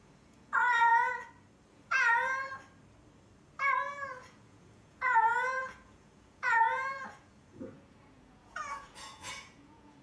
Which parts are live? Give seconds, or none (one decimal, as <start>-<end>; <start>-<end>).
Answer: 0.9-1.7; 2.5-4.1